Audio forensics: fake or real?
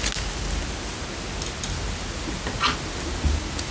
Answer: real